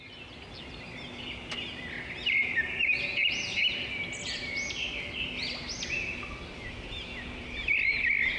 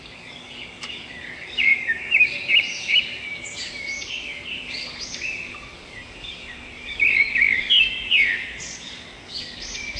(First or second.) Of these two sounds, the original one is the first